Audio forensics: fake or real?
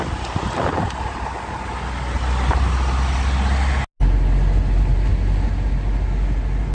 real